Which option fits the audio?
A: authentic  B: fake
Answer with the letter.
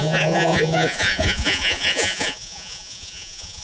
B